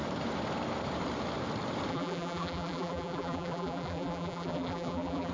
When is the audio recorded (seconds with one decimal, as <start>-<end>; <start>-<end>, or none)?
0.0-1.9